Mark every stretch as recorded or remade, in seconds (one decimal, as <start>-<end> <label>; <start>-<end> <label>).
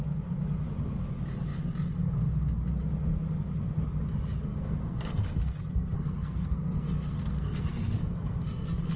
0.0-4.5 recorded; 4.5-9.0 remade